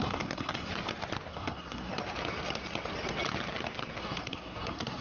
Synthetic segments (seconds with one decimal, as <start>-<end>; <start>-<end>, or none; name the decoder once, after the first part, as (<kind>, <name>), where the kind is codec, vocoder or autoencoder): 0.0-0.7 (codec, SNAC); 1.3-1.9; 4.0-5.0